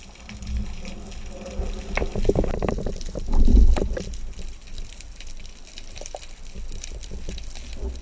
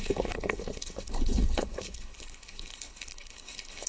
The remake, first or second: second